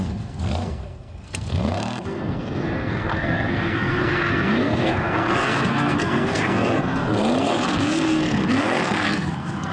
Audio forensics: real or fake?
fake